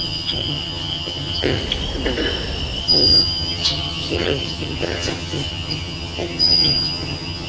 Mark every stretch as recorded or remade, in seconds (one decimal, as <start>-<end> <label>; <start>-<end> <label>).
0.0-1.6 remade; 1.6-2.8 recorded; 2.8-7.5 remade